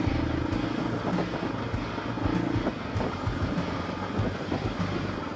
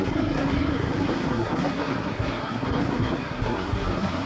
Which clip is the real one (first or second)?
first